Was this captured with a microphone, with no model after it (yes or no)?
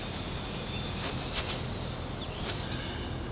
yes